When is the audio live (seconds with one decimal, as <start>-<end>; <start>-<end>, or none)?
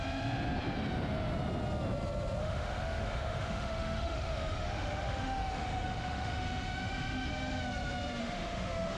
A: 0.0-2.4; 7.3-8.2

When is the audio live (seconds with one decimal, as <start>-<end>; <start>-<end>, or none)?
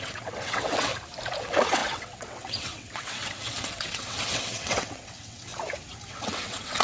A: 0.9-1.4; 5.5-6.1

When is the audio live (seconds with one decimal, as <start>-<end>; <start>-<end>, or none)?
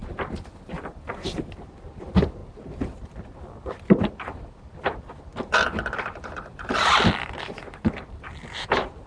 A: 0.0-1.1; 2.4-4.1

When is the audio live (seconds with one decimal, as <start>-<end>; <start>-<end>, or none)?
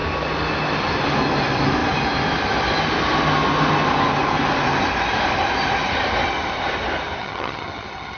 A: 0.0-7.2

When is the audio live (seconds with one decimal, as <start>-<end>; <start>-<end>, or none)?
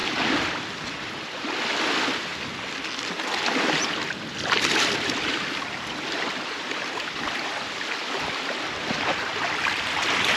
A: 0.0-0.9; 2.3-4.2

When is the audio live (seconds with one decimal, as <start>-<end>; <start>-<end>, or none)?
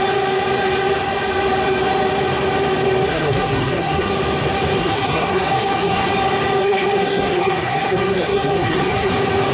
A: 0.0-3.1; 4.1-4.8; 6.1-6.6; 9.1-9.5